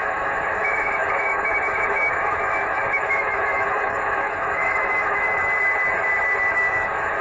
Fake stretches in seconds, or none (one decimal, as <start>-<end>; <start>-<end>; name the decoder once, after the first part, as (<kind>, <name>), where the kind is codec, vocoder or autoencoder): 0.0-5.5 (autoencoder, DAC-VAE); 6.5-7.2